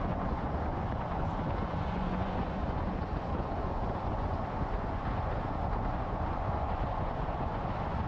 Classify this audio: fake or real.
fake